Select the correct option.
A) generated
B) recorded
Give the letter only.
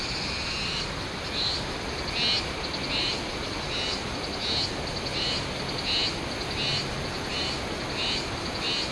B